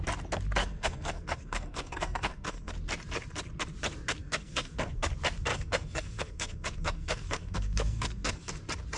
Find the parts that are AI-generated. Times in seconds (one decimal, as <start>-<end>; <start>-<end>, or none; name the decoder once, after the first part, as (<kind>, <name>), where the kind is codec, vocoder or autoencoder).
0.6-2.7 (codec, SNAC); 4.2-5.1; 5.5-8.5